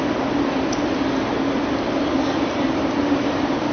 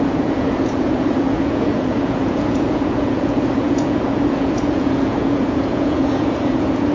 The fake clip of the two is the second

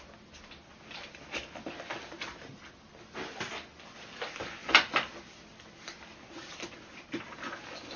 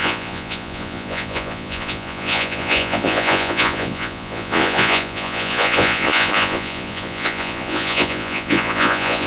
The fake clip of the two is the second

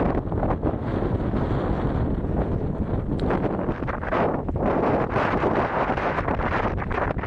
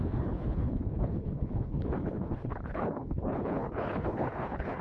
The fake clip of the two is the second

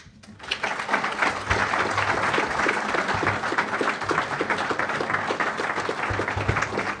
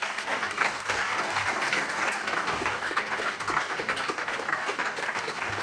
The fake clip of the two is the second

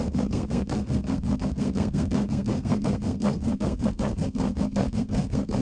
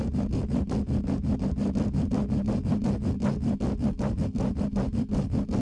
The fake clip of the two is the first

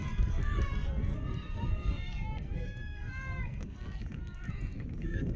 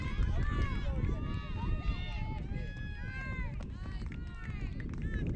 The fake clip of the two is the first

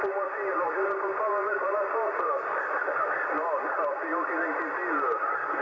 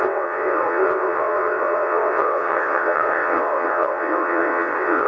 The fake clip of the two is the second